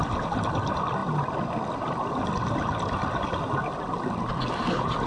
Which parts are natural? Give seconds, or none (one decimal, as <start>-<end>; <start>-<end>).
0.0-5.1